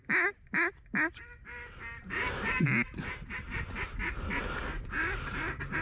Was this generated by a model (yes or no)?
no